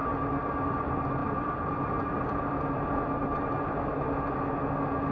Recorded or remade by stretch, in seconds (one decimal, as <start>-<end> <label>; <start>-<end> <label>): 0.0-5.1 recorded

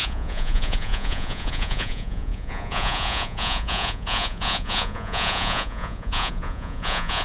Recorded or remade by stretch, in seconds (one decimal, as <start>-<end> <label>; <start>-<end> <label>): 0.0-7.2 remade